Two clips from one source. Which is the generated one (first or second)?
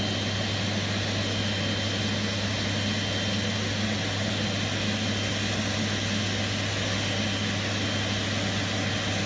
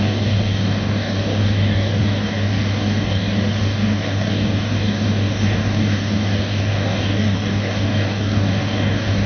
second